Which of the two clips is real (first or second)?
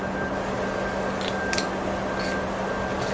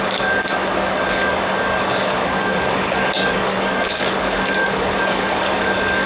first